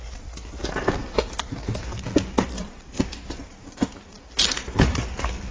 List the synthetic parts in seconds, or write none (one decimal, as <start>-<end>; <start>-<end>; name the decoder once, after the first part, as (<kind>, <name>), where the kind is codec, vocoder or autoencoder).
none